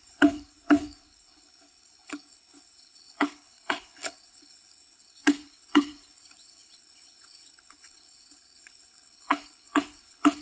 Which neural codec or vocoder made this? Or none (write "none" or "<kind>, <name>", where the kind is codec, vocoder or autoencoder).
codec, HILCodec